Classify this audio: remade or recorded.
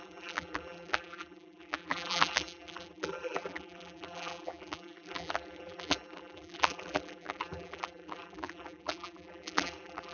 remade